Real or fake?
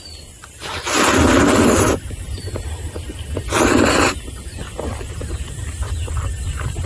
fake